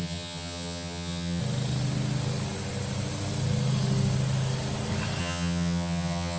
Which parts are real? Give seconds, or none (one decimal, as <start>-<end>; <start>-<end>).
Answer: 1.4-5.2

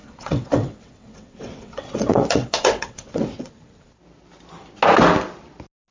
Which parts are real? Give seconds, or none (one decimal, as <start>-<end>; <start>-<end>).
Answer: 3.5-5.9

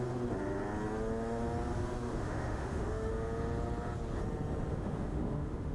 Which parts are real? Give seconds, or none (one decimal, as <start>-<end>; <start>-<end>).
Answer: 0.0-2.1; 3.1-4.7

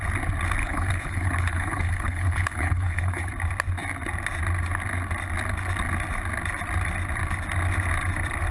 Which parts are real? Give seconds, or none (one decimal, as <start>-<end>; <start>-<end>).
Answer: 0.0-0.6; 3.3-8.5

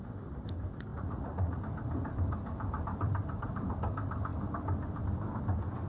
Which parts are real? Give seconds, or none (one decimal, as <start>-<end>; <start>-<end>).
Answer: 0.0-0.9; 1.6-5.9